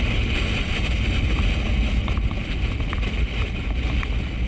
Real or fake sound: real